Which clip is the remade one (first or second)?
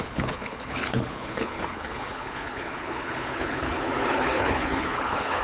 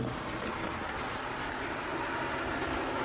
first